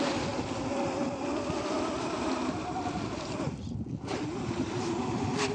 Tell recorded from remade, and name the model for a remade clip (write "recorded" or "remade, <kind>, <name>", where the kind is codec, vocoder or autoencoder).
recorded